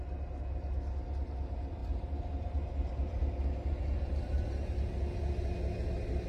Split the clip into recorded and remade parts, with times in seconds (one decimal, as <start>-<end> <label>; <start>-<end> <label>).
0.0-6.3 recorded